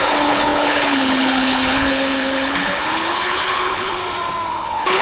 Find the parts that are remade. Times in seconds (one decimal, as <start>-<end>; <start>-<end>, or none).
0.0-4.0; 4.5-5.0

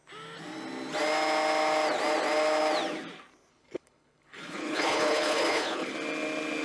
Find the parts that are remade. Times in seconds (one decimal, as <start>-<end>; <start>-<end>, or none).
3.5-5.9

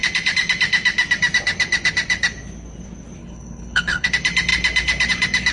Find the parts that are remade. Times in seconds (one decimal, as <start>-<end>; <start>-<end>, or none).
3.2-4.1